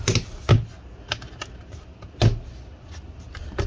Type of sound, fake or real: real